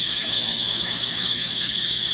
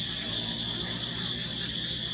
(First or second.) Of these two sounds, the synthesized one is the first